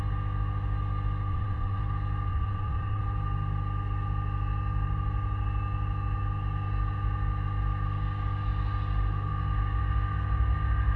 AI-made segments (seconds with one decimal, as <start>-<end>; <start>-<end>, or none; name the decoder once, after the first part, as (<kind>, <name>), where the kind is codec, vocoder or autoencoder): 1.3-1.8 (vocoder, WaveNeXt); 2.3-3.0